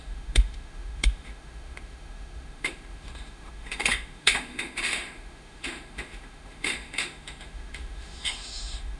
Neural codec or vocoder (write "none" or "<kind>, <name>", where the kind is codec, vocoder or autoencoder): autoencoder, DAC-VAE